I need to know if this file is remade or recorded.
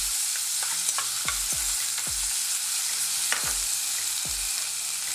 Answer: recorded